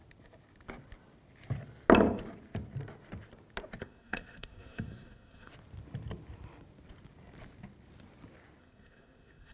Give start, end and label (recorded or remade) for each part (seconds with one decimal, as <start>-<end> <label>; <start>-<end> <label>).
0.0-3.8 recorded; 3.8-5.5 remade; 5.5-8.6 recorded; 8.6-9.5 remade